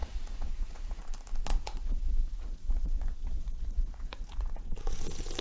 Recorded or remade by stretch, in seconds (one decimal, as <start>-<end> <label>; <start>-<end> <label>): 0.0-1.0 remade; 1.0-1.5 recorded; 1.5-4.7 remade; 4.7-5.4 recorded